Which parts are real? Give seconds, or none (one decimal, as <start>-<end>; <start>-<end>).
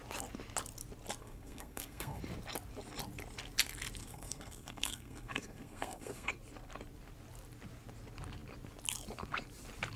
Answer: 0.0-1.2; 2.2-4.0; 6.3-10.0